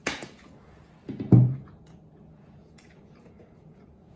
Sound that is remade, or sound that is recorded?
remade